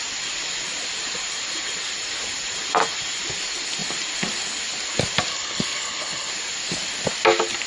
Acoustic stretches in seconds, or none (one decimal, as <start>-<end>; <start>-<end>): 0.0-5.3; 6.3-7.7